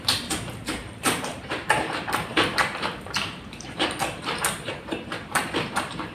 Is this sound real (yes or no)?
no